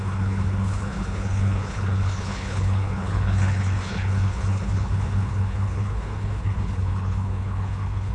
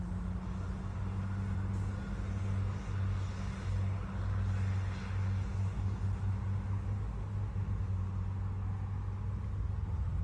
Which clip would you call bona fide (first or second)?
second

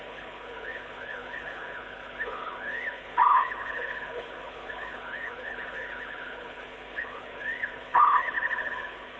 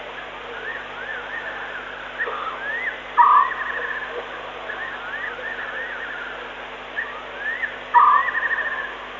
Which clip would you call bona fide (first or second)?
second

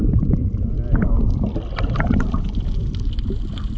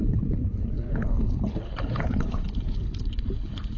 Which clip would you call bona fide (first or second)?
first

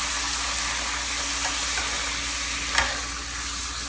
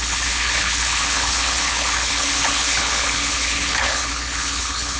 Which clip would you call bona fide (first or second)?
first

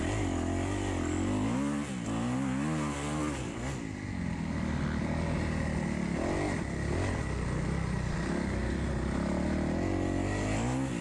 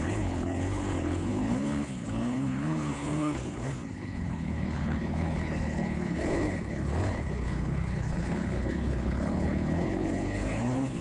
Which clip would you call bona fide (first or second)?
first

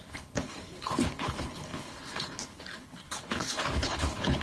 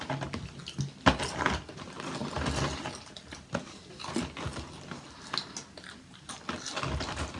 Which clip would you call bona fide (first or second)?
second